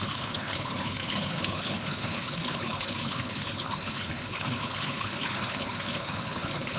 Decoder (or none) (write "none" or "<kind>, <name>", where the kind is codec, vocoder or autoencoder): codec, HILCodec